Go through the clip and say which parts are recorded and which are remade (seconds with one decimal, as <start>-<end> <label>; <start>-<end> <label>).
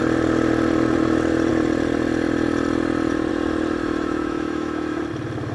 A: 0.0-3.8 recorded; 3.8-5.0 remade; 5.0-5.5 recorded